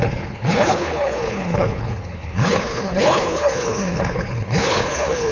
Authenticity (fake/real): fake